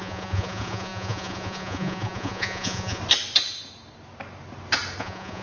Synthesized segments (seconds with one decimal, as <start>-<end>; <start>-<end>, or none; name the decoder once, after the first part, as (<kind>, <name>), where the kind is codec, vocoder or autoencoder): 0.0-3.0 (vocoder, Vocos); 5.0-5.4